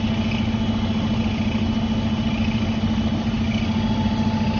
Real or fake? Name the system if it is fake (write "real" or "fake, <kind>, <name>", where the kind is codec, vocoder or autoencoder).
real